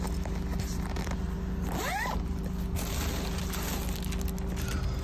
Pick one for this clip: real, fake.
real